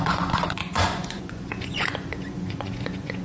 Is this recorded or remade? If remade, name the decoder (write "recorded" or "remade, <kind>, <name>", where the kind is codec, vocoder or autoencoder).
remade, vocoder, Vocos